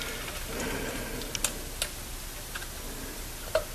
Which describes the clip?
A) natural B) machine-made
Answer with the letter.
A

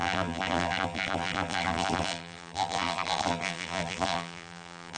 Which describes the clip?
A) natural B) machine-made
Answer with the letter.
B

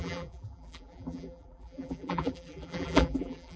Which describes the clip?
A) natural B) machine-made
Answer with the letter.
B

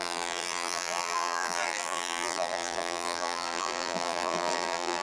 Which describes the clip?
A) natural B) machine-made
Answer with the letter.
B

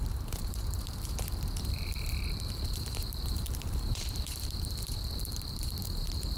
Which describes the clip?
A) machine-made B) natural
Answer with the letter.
A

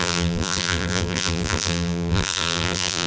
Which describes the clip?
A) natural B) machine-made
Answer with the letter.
B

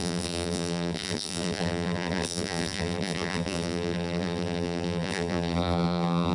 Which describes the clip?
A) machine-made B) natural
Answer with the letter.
A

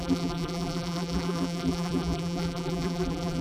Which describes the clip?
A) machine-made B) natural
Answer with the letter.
A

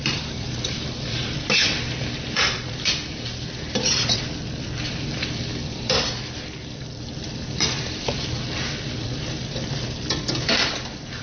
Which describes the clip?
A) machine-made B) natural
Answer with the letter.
A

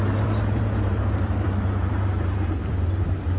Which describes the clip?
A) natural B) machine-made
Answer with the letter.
B